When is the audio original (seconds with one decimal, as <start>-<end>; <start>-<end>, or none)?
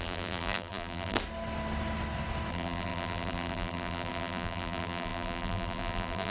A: 1.2-2.5